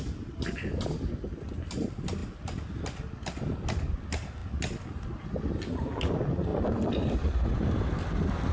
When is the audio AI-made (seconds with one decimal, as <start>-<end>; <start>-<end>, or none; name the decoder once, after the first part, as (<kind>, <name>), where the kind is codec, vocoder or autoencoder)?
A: none